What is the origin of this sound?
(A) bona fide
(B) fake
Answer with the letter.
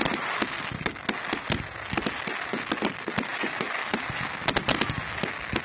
A